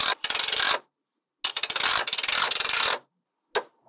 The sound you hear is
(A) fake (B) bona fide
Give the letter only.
B